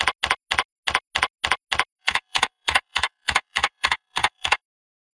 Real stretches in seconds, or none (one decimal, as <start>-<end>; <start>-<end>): 0.0-2.0; 4.6-5.1